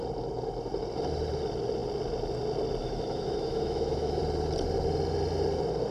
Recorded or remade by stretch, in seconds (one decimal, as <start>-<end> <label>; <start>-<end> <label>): 0.0-2.8 recorded; 2.8-4.2 remade; 4.2-5.9 recorded